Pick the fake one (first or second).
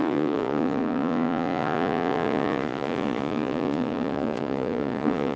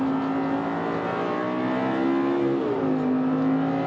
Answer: first